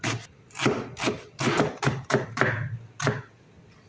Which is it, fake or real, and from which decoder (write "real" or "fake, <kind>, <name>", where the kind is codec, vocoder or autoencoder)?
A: real